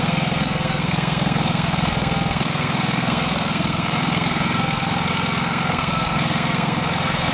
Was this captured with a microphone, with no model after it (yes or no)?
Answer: no